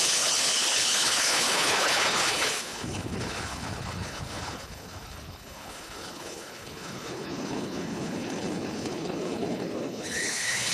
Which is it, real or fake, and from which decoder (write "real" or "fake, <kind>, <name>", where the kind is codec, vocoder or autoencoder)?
fake, codec, HILCodec